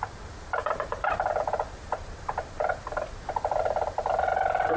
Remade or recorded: recorded